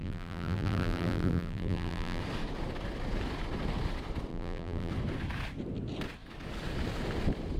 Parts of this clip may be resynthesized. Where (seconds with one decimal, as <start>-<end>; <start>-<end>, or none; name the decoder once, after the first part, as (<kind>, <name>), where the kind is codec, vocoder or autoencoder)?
0.0-2.2 (vocoder, BigVGAN v2); 4.3-4.9

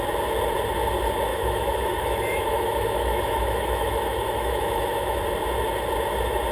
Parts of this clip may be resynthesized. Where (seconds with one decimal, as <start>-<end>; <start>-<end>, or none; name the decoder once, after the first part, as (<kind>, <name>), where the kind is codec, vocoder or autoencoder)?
1.3-5.2 (autoencoder, DAC-VAE)

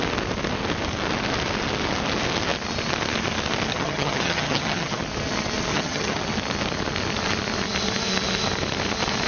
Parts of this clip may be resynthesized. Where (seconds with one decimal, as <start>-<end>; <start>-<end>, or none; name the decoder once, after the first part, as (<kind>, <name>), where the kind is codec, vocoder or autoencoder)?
3.7-5.0 (vocoder, HiFi-GAN); 5.7-6.2

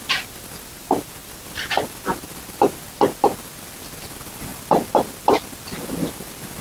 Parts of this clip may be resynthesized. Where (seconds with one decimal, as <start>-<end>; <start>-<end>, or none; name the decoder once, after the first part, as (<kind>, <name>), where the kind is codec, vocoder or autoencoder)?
1.2-2.8 (vocoder, BigVGAN v2)

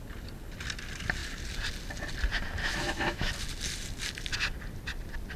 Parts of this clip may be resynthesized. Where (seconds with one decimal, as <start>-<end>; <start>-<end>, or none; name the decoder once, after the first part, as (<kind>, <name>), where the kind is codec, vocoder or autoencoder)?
2.6-3.3 (autoencoder, DAC-VAE)